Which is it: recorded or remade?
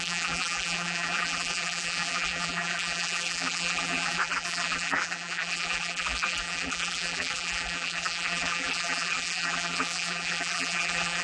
remade